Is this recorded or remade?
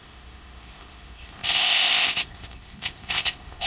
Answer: remade